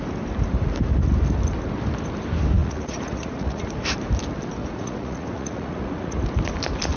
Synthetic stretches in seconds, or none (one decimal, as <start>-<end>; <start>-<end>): 2.6-3.7; 4.6-6.2